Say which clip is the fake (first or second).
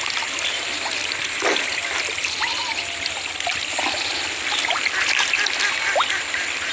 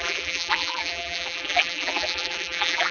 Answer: second